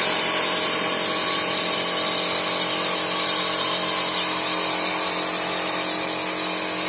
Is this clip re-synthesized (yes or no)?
yes